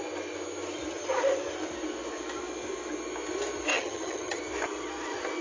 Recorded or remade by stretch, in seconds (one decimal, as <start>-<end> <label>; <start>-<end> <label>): 0.0-3.7 recorded; 3.7-4.4 remade; 4.4-5.4 recorded